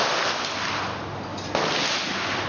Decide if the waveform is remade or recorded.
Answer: recorded